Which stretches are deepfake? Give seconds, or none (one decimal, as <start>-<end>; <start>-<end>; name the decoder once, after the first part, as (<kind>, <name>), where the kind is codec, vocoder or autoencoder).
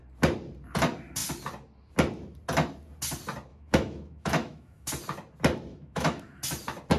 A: 3.5-4.9 (autoencoder, DAC-VAE); 5.7-6.4